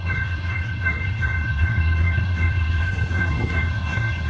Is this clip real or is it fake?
fake